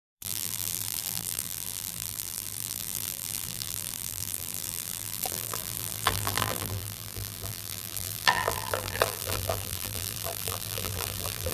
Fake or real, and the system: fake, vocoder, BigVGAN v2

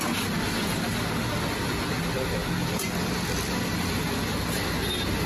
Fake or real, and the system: real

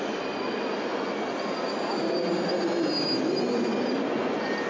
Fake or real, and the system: real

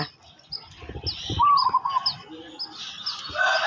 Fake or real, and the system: real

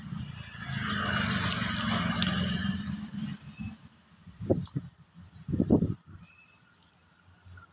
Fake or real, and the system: real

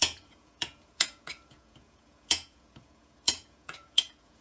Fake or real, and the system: fake, vocoder, Vocos